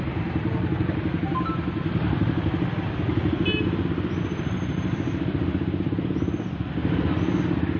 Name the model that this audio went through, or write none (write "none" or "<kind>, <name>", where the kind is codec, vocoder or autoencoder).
none